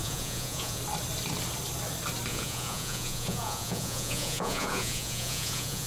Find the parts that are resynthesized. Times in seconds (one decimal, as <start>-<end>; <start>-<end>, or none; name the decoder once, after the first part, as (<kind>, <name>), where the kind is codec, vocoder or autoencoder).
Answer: 0.0-0.8 (vocoder, Vocos); 2.3-5.9